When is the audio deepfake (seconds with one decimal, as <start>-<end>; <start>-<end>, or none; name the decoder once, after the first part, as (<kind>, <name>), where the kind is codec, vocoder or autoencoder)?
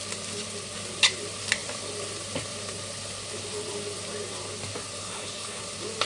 5.0-5.6 (codec, HILCodec)